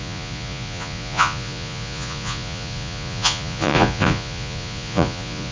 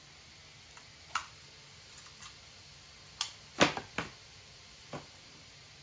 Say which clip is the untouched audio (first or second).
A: second